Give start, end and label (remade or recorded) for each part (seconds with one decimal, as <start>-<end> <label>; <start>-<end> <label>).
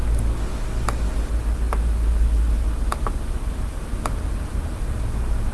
0.0-5.5 recorded